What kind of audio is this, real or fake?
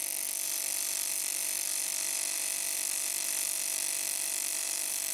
real